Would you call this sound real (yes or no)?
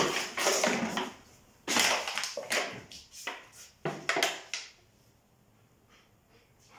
yes